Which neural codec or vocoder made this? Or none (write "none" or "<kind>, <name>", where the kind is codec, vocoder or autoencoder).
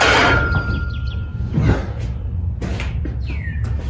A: none